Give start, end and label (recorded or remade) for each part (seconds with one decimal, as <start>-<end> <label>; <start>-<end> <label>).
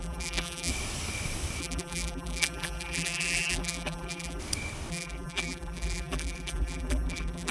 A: 0.0-0.7 remade; 0.7-1.6 recorded; 1.6-4.4 remade; 4.4-4.9 recorded; 4.9-7.5 remade